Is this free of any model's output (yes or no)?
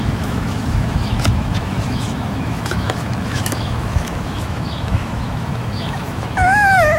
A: no